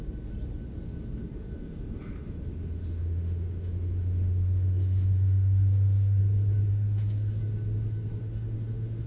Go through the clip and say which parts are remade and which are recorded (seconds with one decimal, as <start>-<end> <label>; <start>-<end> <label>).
0.0-1.2 recorded; 1.2-6.2 remade; 6.2-6.7 recorded; 6.7-7.4 remade; 7.4-8.2 recorded; 8.2-9.1 remade